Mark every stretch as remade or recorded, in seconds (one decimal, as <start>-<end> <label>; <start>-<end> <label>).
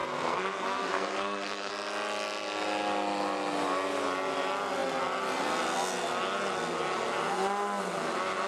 0.0-1.7 remade; 1.7-8.5 recorded